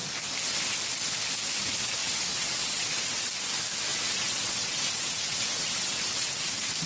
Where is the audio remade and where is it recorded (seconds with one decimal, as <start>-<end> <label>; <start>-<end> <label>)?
0.0-2.0 recorded; 2.0-3.3 remade; 3.3-3.9 recorded; 3.9-6.5 remade; 6.5-6.9 recorded